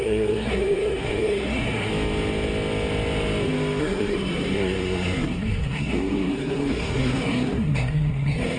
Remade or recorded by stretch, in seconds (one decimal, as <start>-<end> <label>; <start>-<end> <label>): 0.0-1.9 remade; 1.9-3.8 recorded; 3.8-8.6 remade